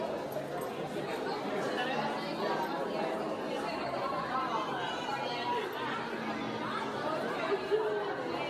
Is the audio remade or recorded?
recorded